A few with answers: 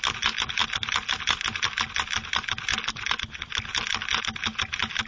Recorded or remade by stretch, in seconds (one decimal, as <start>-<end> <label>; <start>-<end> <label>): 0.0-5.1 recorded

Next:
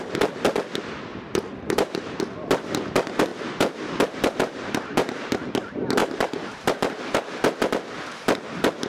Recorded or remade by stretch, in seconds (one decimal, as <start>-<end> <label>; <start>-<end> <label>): 0.0-1.1 recorded; 1.1-2.2 remade; 2.2-3.3 recorded; 3.3-5.3 remade; 5.3-6.0 recorded; 6.0-7.2 remade; 7.2-8.9 recorded

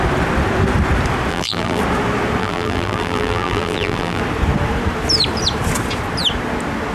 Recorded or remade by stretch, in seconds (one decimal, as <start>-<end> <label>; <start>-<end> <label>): 0.0-1.3 recorded; 1.3-1.8 remade; 1.8-2.4 recorded; 2.4-4.2 remade; 4.2-6.9 recorded

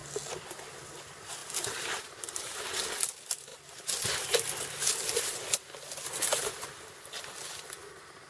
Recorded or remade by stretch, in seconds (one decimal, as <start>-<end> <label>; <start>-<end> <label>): 0.0-1.4 recorded; 1.4-2.7 remade; 2.7-8.3 recorded